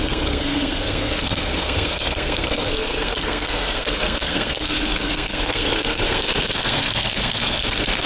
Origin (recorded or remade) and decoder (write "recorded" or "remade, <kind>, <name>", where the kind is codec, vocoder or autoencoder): remade, codec, SNAC